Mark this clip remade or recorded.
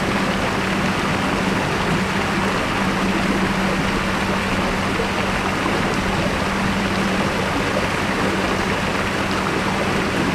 recorded